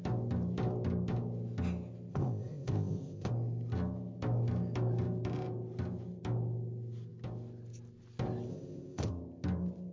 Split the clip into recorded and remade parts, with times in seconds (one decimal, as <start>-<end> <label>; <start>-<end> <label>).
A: 0.0-2.1 recorded; 2.1-3.3 remade; 3.3-8.5 recorded; 8.5-9.1 remade; 9.1-9.9 recorded